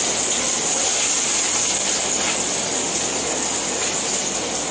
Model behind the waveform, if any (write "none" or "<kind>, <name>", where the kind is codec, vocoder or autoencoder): none